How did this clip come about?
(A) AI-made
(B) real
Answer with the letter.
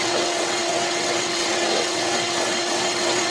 A